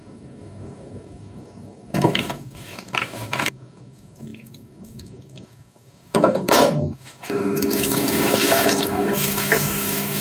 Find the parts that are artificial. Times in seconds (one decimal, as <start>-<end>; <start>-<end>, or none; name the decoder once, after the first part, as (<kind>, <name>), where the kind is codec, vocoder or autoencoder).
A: 0.0-10.2 (codec, DAC)